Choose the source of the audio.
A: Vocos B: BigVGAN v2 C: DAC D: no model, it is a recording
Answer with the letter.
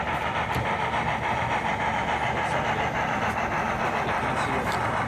D